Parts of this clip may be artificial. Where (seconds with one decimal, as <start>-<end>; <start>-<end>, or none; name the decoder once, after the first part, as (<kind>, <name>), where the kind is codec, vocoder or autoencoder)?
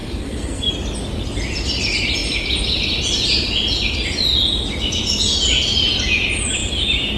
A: 0.0-0.7 (codec, SNAC)